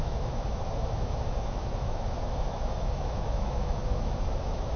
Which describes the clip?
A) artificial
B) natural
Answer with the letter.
A